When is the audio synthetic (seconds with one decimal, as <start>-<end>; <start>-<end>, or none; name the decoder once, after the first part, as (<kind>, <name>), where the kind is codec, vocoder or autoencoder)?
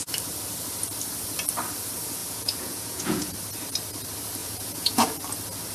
2.2-3.3 (vocoder, Vocos); 4.4-5.2